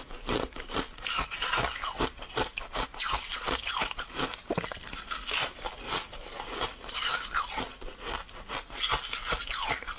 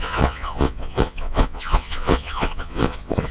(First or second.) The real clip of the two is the first